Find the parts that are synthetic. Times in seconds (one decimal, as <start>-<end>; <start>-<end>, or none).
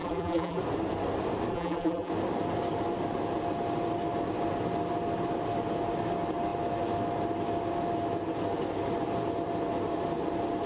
0.0-0.6; 1.5-2.1